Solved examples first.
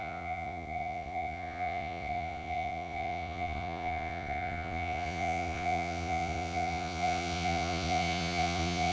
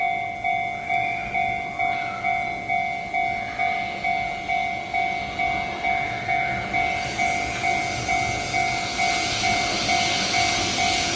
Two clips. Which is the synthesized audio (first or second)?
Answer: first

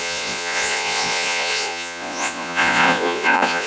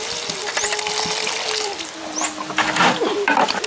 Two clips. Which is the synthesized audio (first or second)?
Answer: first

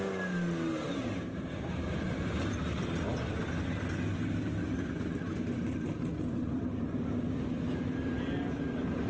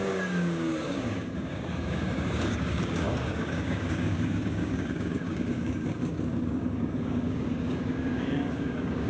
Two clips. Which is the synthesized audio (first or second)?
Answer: second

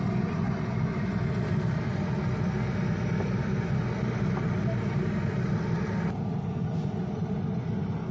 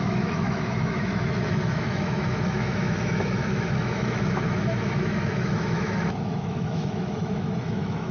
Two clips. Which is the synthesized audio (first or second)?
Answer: second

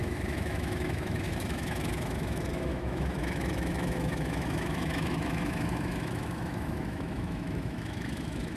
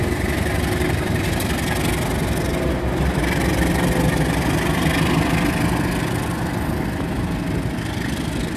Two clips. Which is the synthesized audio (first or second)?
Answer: first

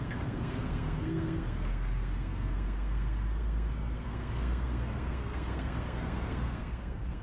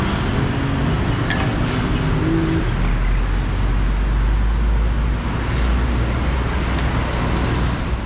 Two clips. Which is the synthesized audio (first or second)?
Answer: first